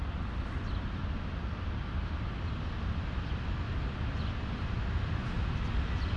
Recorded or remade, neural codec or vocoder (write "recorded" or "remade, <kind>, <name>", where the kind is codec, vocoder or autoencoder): recorded